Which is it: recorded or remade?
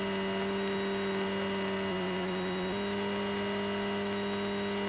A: recorded